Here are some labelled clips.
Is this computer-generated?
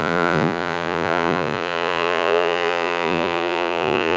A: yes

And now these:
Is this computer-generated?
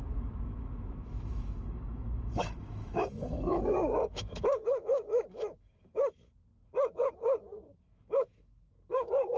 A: yes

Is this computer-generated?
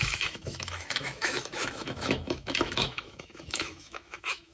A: yes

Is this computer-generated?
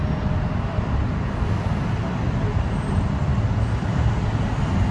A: no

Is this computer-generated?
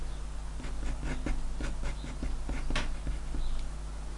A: no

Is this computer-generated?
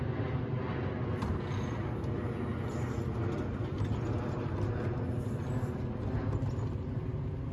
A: no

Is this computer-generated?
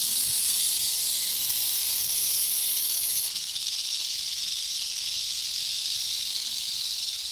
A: yes